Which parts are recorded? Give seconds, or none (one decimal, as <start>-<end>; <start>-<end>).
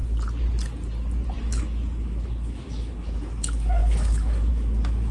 0.0-1.4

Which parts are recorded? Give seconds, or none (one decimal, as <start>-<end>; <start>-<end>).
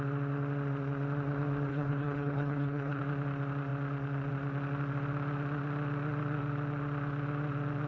0.0-1.7; 3.0-7.9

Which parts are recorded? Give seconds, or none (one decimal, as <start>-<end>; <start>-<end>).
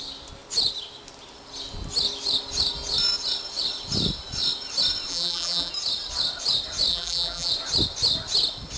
0.0-5.1; 5.7-6.9; 7.5-8.8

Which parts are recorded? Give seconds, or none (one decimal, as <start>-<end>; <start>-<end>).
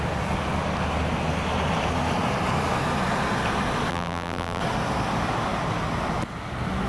0.0-3.9; 4.6-6.9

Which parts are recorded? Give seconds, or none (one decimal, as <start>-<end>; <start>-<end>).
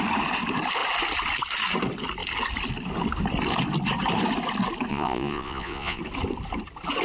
0.0-4.9; 6.0-7.0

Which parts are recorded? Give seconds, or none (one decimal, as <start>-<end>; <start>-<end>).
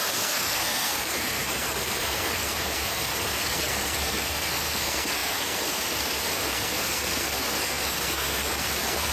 none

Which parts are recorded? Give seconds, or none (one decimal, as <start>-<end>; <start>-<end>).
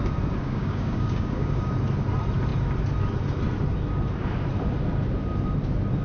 0.0-0.4; 1.7-6.0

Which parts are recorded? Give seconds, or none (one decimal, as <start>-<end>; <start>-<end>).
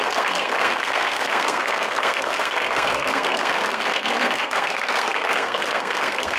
none